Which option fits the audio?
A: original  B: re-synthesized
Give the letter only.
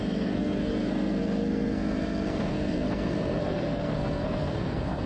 B